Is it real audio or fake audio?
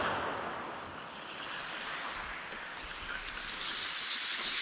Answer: real